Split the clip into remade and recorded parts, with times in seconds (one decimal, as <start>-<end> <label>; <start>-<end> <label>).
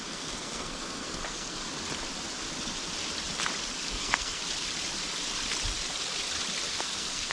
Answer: 0.0-1.6 remade; 1.6-3.9 recorded; 3.9-4.4 remade; 4.4-6.7 recorded; 6.7-7.3 remade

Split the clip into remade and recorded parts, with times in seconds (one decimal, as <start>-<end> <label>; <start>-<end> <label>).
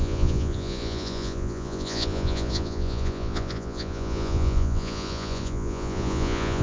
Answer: 0.0-6.6 remade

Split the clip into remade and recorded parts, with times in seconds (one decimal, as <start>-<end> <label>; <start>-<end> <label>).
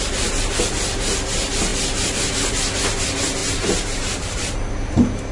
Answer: 0.0-3.4 recorded; 3.4-4.7 remade; 4.7-5.3 recorded